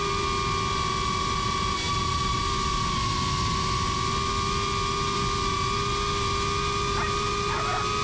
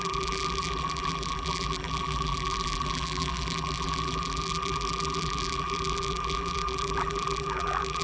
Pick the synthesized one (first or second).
second